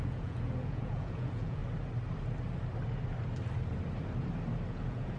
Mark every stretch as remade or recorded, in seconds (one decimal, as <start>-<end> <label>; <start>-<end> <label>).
0.0-1.6 remade; 1.6-4.7 recorded; 4.7-5.2 remade